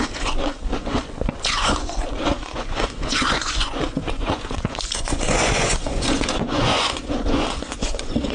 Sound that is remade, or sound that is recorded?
remade